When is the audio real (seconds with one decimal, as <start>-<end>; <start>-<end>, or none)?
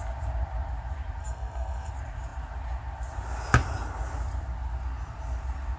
0.0-1.2; 1.9-5.8